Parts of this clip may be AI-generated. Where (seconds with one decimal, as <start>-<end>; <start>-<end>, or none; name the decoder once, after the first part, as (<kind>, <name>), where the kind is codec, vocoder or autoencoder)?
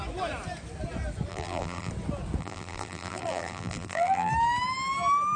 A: 1.3-1.9 (vocoder, BigVGAN v2); 2.4-4.3